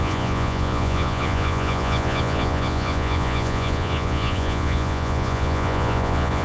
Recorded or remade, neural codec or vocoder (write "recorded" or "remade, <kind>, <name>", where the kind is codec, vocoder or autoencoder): remade, vocoder, Vocos